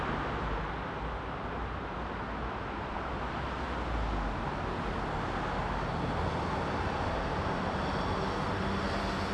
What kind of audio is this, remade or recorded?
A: recorded